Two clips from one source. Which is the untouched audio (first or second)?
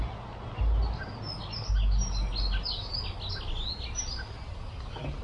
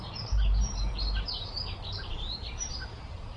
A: first